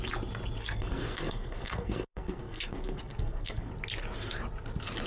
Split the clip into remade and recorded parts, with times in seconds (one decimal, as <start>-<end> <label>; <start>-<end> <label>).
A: 0.0-0.6 recorded; 0.6-3.7 remade; 3.7-5.1 recorded